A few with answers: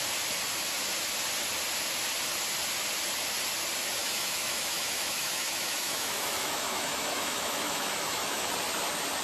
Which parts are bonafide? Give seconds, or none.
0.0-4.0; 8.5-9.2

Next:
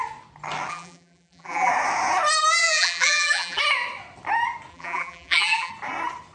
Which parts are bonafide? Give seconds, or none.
0.0-0.7; 1.7-2.6; 3.6-4.7; 5.7-6.3

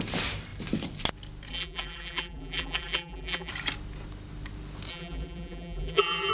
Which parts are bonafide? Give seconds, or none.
0.0-1.5; 3.5-4.9